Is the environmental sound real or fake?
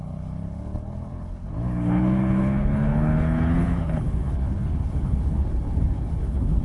fake